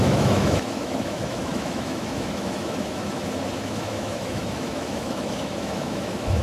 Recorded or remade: remade